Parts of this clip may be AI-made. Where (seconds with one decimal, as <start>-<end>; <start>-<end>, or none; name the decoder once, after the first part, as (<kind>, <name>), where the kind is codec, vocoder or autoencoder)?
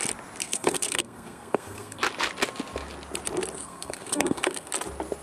0.4-2.0 (codec, SNAC); 3.6-4.7